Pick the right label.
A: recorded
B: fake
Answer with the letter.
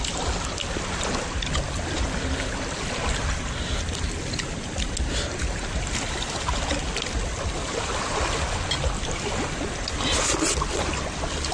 A